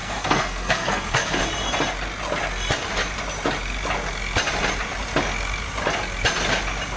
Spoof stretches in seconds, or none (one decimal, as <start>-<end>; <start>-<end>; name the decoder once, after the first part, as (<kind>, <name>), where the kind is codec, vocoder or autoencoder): 0.0-1.4 (codec, SNAC)